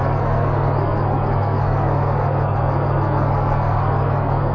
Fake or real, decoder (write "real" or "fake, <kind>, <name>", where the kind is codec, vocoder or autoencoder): fake, codec, SNAC